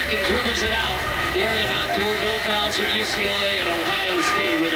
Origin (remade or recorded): remade